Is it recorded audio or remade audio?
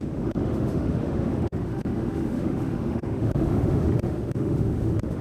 remade